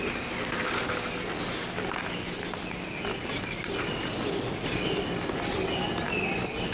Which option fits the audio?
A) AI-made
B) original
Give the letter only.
B